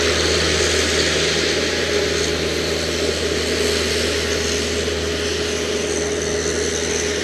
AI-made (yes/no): no